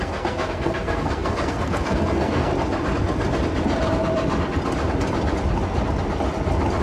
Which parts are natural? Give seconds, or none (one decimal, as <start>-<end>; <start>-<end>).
2.5-6.8